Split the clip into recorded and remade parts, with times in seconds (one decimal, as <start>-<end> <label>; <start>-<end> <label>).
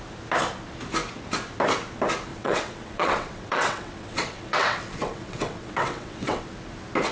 0.0-2.3 recorded; 2.3-6.4 remade; 6.4-7.1 recorded